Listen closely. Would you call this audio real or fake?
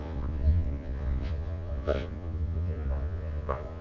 fake